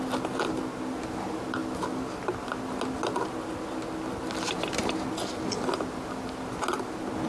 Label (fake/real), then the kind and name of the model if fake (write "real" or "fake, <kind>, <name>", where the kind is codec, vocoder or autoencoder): real